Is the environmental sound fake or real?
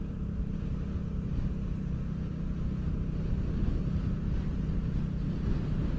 real